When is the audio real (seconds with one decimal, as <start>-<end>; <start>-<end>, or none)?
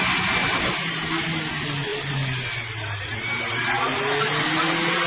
0.0-0.4; 1.1-5.1